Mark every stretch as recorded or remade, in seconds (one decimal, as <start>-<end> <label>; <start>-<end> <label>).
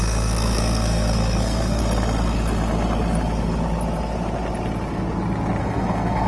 0.0-1.8 remade; 1.8-5.6 recorded; 5.6-6.3 remade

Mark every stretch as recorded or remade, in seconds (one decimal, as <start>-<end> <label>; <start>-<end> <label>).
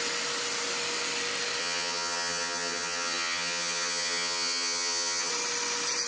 0.0-1.6 recorded; 1.6-5.3 remade; 5.3-6.1 recorded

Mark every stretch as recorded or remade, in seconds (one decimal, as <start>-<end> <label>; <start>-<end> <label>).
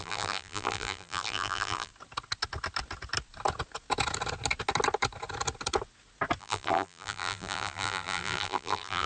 0.0-1.9 remade; 1.9-6.4 recorded; 6.4-9.1 remade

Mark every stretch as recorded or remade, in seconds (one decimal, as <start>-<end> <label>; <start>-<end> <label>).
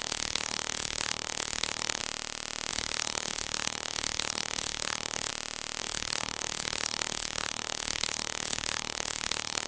0.0-2.0 remade; 2.0-2.7 recorded; 2.7-5.3 remade; 5.3-5.8 recorded; 5.8-9.7 remade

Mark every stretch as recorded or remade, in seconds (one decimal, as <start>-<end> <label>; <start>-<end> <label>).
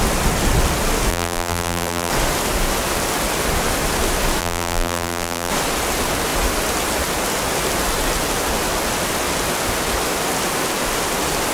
0.0-1.1 recorded; 1.1-2.1 remade; 2.1-4.4 recorded; 4.4-5.5 remade; 5.5-11.5 recorded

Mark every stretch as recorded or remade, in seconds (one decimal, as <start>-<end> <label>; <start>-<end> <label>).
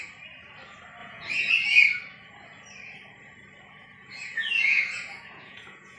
0.0-1.0 recorded; 1.0-1.5 remade; 1.5-3.8 recorded; 3.8-6.0 remade